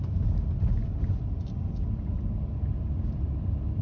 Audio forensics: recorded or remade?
recorded